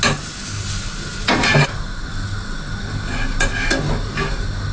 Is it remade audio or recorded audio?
recorded